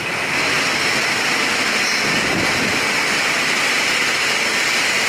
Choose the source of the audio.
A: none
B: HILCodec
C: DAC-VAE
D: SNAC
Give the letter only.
A